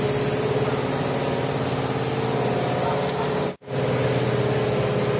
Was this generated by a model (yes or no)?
no